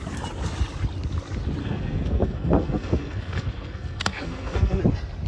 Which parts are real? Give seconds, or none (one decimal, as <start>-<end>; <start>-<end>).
0.0-1.6; 4.8-5.3